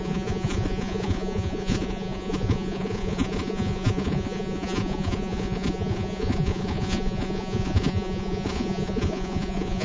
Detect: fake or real fake